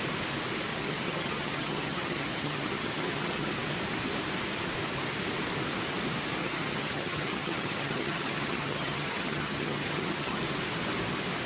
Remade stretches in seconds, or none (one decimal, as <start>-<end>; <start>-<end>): 0.7-3.5; 6.4-10.4

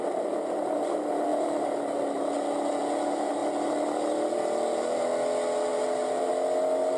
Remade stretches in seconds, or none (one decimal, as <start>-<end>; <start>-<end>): 5.7-6.3

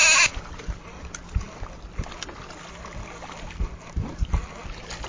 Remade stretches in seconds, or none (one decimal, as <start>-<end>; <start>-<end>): none

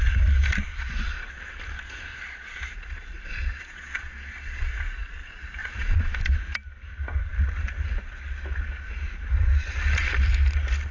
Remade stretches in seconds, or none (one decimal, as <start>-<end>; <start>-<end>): 0.7-1.3; 2.1-4.7; 5.6-6.2